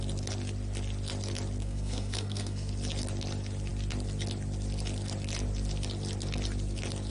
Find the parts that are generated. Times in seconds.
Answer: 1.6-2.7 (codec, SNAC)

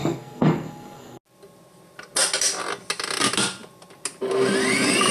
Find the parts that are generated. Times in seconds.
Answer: 0.0-1.2 (codec, SNAC)

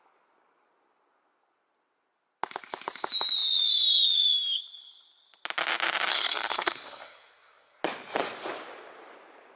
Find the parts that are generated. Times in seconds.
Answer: 6.1-7.8 (codec, SNAC)